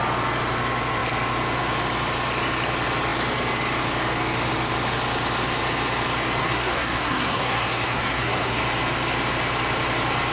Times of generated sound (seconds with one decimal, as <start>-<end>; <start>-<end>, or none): 6.4-8.6